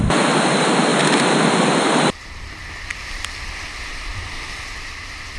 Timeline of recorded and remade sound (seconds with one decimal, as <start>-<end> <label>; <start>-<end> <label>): 0.0-5.4 recorded

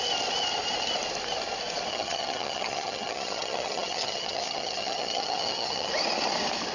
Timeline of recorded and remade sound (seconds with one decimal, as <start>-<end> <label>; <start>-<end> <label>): 0.0-1.9 recorded; 1.9-5.9 remade; 5.9-6.7 recorded

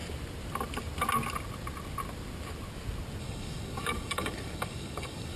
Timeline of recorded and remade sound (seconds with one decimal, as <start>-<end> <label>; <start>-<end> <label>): 0.0-3.2 recorded; 3.2-5.4 remade

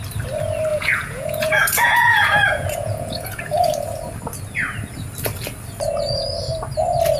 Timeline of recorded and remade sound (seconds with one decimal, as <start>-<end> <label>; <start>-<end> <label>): 0.0-0.7 recorded; 0.7-3.7 remade; 3.7-7.2 recorded